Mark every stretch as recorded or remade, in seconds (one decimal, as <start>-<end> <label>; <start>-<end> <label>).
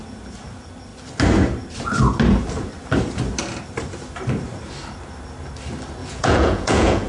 0.0-6.0 recorded; 6.0-7.1 remade